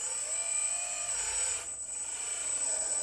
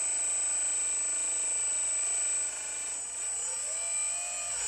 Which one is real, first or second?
second